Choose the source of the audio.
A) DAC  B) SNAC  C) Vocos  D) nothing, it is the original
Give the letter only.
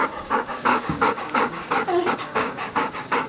A